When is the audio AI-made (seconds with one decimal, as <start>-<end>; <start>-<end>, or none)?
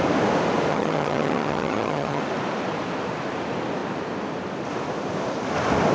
0.7-2.2